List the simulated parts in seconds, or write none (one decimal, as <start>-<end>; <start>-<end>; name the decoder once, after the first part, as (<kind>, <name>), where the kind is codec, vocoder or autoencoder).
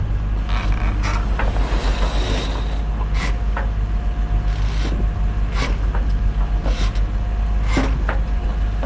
none